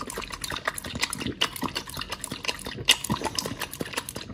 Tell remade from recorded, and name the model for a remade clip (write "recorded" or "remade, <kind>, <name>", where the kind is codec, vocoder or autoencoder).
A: recorded